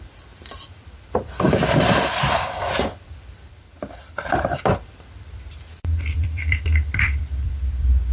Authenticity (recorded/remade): remade